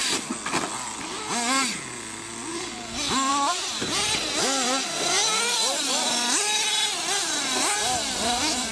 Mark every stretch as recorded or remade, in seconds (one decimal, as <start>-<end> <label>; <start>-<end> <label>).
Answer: 0.0-8.7 recorded